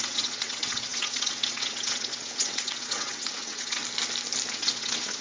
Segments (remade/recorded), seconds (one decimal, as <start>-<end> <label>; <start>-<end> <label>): 0.0-3.8 remade; 3.8-4.5 recorded; 4.5-5.2 remade